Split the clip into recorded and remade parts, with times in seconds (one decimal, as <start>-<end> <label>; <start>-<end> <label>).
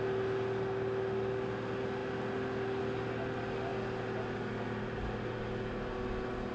0.0-6.5 recorded